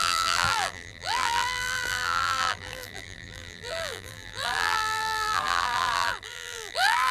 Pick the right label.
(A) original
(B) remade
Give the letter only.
B